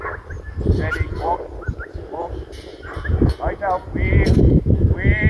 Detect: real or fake real